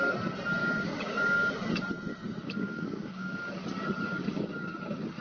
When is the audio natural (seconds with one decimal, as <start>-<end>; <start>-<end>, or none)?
0.0-0.6; 1.5-2.2; 3.4-5.2